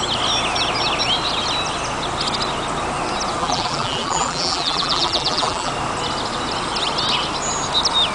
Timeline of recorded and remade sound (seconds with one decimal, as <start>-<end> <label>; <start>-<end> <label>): 0.0-3.4 recorded; 3.4-5.7 remade; 5.7-8.1 recorded